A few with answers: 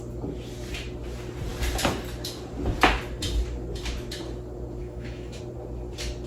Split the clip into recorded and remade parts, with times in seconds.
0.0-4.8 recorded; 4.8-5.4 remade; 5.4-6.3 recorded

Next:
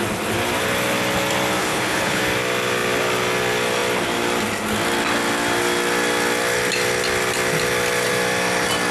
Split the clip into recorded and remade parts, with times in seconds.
0.0-1.6 recorded; 1.6-2.2 remade; 2.2-8.9 recorded

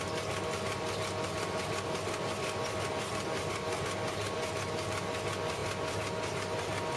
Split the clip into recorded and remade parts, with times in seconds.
0.0-7.0 recorded

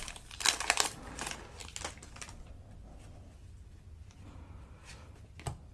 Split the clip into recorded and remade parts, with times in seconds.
0.0-5.7 recorded

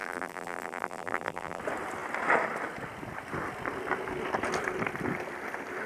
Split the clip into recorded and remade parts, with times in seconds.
0.0-1.6 remade; 1.6-5.9 recorded